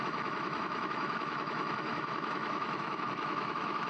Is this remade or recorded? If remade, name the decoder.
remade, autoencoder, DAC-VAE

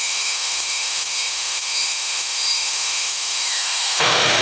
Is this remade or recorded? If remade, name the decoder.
remade, autoencoder, DAC-VAE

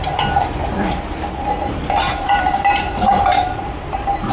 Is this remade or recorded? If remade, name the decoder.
remade, vocoder, BigVGAN v2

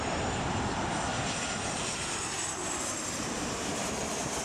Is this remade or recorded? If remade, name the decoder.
remade, vocoder, BigVGAN v2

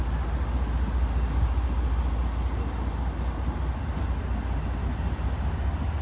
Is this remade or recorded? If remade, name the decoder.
recorded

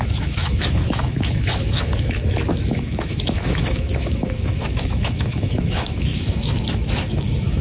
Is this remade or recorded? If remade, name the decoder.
remade, autoencoder, DAC-VAE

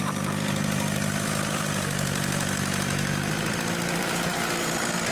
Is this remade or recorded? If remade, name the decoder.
remade, vocoder, BigVGAN v2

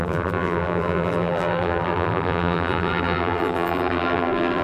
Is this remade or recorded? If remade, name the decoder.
remade, vocoder, BigVGAN v2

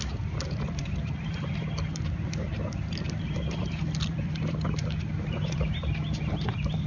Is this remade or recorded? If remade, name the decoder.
remade, vocoder, BigVGAN v2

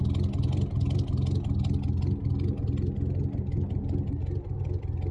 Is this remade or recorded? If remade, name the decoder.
recorded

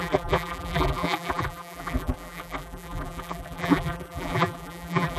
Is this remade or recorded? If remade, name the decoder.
remade, vocoder, BigVGAN v2